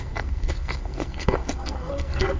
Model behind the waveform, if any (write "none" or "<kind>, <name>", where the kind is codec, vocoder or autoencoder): codec, SNAC